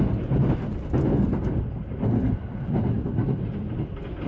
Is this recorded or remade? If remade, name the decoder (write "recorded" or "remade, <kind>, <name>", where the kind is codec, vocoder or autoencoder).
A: recorded